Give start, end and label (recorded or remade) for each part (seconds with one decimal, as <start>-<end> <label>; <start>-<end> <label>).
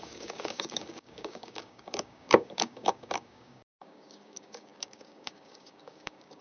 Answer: 0.0-6.4 remade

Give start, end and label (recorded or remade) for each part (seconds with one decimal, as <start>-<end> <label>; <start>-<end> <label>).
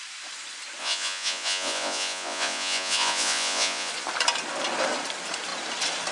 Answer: 0.0-0.8 recorded; 0.8-3.9 remade; 3.9-6.1 recorded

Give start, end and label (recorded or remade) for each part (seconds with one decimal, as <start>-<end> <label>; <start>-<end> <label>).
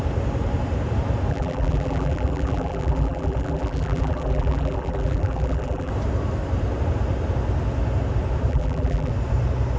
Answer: 0.0-1.3 recorded; 1.3-5.9 remade; 5.9-8.5 recorded; 8.5-9.1 remade; 9.1-9.8 recorded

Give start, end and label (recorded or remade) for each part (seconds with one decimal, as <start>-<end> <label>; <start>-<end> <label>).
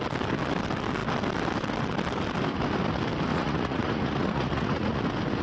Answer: 0.0-3.3 recorded; 3.3-5.0 remade; 5.0-5.4 recorded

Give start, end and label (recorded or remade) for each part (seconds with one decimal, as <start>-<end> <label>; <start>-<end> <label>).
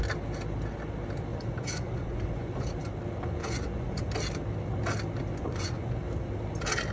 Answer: 0.0-1.3 recorded; 1.3-2.7 remade; 2.7-3.4 recorded; 3.4-4.1 remade; 4.1-5.4 recorded; 5.4-6.0 remade; 6.0-6.9 recorded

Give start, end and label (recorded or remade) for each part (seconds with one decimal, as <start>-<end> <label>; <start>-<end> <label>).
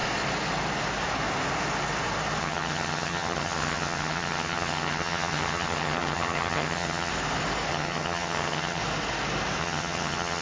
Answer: 0.0-2.4 recorded; 2.4-7.1 remade; 7.1-7.7 recorded; 7.7-8.8 remade; 8.8-9.6 recorded; 9.6-10.4 remade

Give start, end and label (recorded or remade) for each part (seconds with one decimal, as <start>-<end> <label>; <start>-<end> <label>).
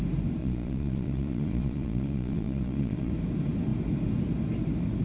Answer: 0.0-0.4 recorded; 0.4-3.1 remade; 3.1-5.0 recorded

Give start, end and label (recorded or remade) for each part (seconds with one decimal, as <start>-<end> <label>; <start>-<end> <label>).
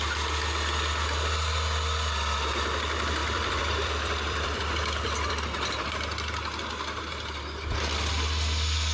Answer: 0.0-3.2 recorded; 3.2-5.9 remade; 5.9-8.9 recorded